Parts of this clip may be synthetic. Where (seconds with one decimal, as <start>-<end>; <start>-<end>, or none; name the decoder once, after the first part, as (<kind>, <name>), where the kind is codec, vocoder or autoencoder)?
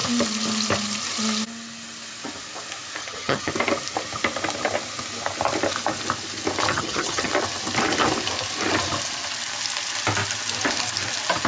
3.0-3.5 (vocoder, HiFi-GAN); 6.7-7.3